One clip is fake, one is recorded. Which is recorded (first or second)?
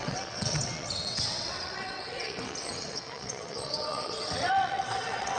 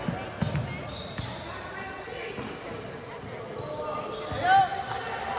second